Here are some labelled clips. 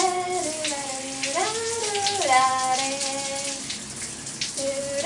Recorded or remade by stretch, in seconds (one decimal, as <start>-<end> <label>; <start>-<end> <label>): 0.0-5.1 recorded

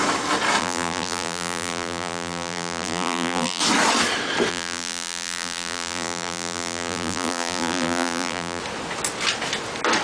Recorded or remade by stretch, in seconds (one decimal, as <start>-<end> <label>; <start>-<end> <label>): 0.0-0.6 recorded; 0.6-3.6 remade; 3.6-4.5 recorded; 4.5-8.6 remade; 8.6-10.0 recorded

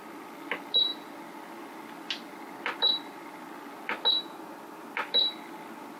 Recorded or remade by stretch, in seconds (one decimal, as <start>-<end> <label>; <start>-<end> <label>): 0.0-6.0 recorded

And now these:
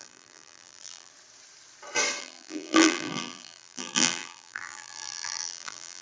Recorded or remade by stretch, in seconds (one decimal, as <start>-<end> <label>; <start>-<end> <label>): 0.0-1.1 remade; 1.1-2.2 recorded; 2.2-6.0 remade